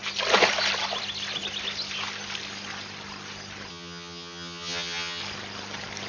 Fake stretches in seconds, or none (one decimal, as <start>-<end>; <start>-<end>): 3.7-5.2